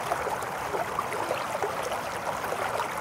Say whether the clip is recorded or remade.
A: recorded